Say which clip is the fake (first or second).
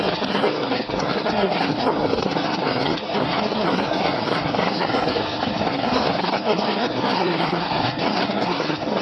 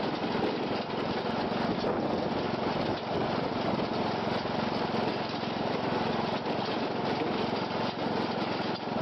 first